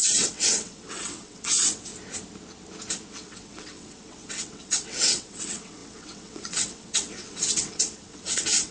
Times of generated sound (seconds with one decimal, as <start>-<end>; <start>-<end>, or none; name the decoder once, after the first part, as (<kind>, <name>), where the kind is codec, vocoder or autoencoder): 0.0-1.9 (vocoder, WaveNeXt); 3.1-8.7